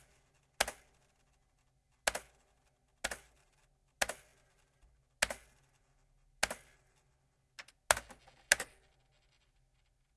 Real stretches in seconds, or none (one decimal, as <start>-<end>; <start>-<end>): 0.0-10.2